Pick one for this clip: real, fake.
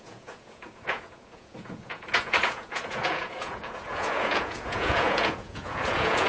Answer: fake